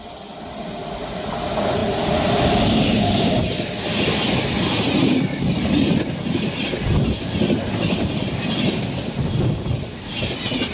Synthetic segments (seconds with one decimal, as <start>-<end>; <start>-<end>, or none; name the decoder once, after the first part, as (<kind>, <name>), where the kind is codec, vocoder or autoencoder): none